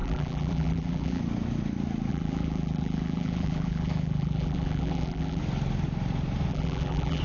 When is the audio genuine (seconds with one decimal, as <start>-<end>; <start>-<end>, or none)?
1.2-2.1; 5.4-6.5